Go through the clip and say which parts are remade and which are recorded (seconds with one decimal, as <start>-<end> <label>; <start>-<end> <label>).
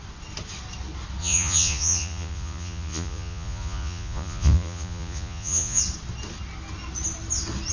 0.0-1.2 recorded; 1.2-5.8 remade; 5.8-7.7 recorded